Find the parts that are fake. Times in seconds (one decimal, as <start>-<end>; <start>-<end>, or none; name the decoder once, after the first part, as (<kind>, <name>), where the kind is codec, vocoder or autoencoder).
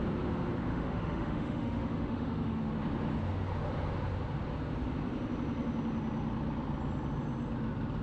0.7-2.7 (autoencoder, DAC-VAE)